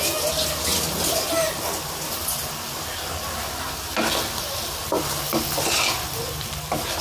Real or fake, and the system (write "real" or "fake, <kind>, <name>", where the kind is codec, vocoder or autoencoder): real